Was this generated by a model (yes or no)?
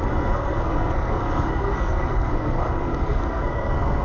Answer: yes